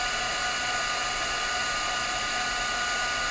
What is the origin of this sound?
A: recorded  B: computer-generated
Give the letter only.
A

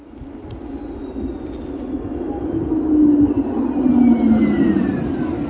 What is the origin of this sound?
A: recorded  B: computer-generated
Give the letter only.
A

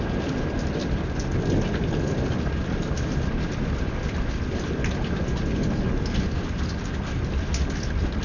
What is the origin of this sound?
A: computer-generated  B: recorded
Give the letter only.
B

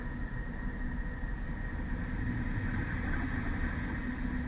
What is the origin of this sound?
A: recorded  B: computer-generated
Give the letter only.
A